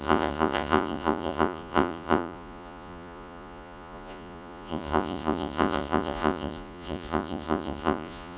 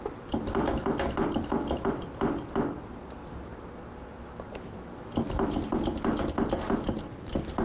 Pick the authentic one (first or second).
second